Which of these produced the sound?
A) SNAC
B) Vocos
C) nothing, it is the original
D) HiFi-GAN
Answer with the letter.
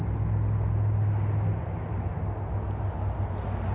C